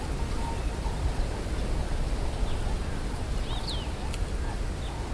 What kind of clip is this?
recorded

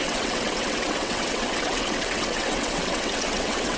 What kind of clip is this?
remade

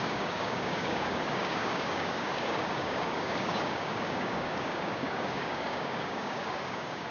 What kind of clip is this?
remade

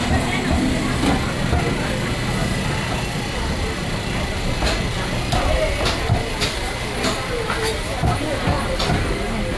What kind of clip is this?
recorded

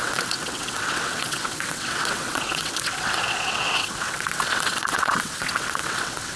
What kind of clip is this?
remade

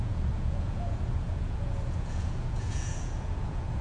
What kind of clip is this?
remade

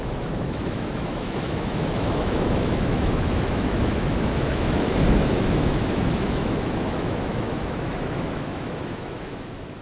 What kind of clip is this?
remade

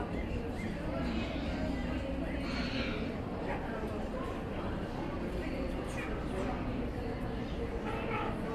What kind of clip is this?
recorded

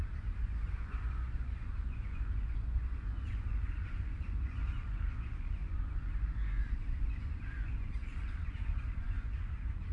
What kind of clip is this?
remade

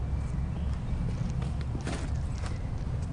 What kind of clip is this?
recorded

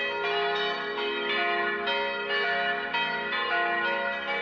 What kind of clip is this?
recorded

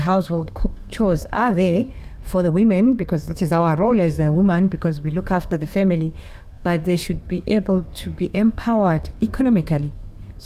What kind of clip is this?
remade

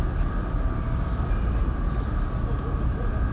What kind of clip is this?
recorded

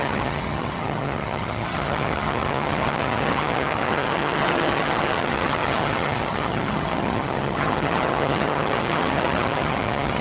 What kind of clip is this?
remade